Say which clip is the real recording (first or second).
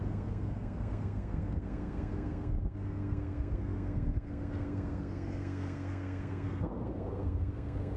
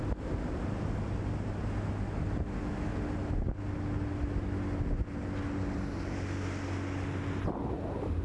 second